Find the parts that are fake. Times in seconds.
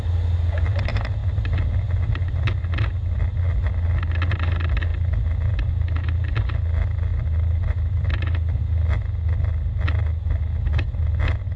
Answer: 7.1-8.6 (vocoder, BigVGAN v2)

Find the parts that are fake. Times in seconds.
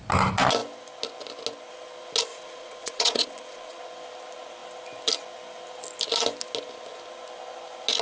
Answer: 2.3-3.8 (vocoder, Vocos)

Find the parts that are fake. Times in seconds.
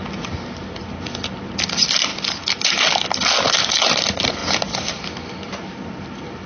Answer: none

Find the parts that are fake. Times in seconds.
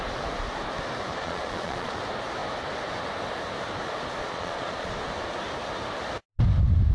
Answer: 1.1-2.0 (vocoder, Vocos); 4.2-4.9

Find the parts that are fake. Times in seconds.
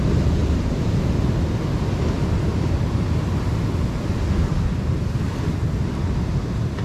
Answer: 0.4-1.0 (vocoder, BigVGAN v2)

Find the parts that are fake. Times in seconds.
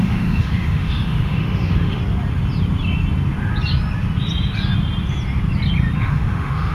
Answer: 0.0-2.0 (autoencoder, DAC-VAE); 6.0-6.7